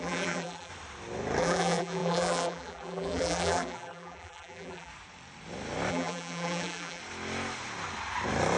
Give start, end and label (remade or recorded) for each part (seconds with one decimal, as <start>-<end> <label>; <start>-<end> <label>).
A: 0.0-0.7 remade; 0.7-1.4 recorded; 1.4-4.9 remade; 4.9-5.9 recorded; 5.9-7.0 remade; 7.0-8.6 recorded